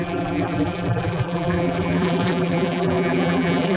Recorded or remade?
remade